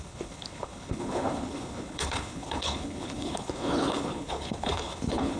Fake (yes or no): yes